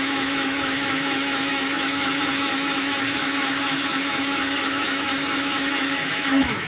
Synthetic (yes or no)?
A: yes